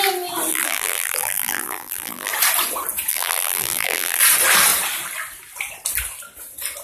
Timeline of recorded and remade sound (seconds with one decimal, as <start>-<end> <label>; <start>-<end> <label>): 0.0-0.5 recorded; 0.5-2.3 remade; 2.3-3.1 recorded; 3.1-4.2 remade; 4.2-6.8 recorded